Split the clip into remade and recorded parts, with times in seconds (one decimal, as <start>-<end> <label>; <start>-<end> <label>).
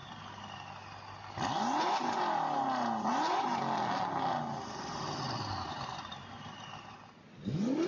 0.0-7.9 recorded